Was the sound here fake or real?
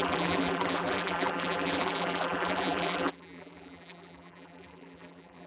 fake